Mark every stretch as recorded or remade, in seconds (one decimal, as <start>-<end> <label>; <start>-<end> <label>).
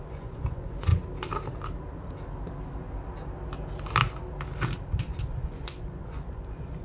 0.0-0.9 remade; 0.9-5.0 recorded; 5.0-6.8 remade